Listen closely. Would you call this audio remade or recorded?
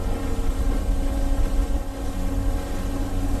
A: recorded